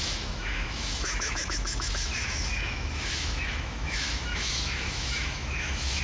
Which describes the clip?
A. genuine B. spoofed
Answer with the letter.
B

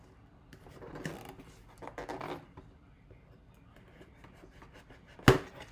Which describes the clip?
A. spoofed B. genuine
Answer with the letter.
B